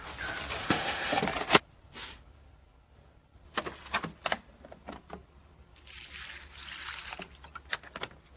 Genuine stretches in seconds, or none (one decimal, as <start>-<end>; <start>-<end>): 0.0-0.6; 1.2-8.4